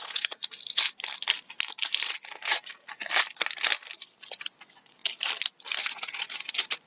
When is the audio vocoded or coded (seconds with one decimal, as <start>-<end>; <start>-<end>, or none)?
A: 0.0-0.4; 4.3-5.0; 5.8-6.9